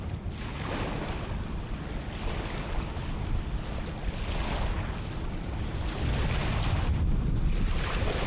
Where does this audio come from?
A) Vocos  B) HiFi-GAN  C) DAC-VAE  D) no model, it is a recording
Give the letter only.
D